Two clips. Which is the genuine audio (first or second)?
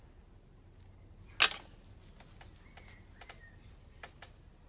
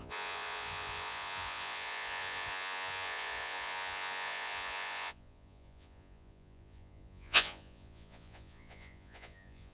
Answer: first